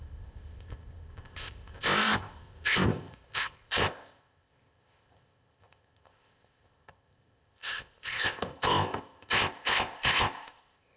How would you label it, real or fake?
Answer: fake